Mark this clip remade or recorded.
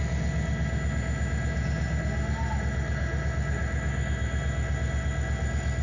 recorded